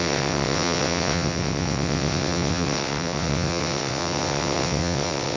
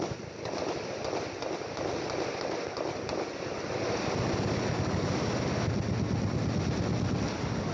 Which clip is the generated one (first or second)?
first